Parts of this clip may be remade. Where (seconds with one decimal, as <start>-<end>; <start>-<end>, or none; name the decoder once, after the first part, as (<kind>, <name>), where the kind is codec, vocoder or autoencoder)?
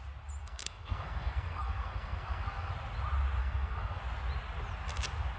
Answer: 0.4-2.7 (codec, SNAC); 3.4-4.0